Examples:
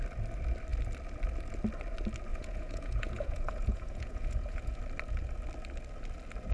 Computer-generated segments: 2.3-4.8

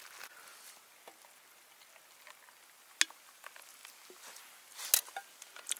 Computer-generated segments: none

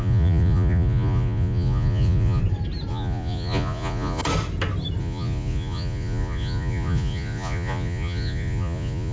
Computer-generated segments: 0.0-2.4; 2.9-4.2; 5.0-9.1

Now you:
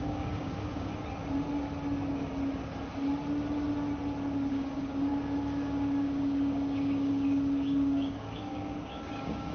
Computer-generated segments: 0.0-0.9; 4.5-9.5

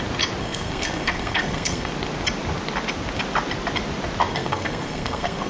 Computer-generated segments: 0.4-1.9; 4.3-5.5

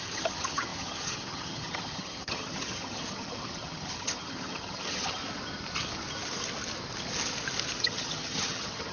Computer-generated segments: 0.0-5.2; 7.8-8.9

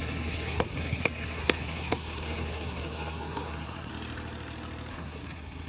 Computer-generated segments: 0.0-3.9; 4.9-5.7

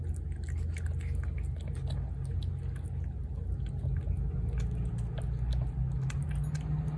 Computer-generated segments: none